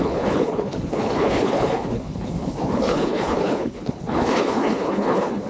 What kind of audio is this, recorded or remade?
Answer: remade